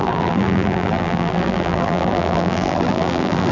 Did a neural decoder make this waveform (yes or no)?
yes